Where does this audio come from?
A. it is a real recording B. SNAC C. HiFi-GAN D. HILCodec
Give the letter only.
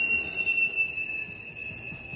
A